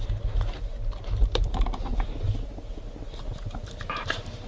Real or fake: real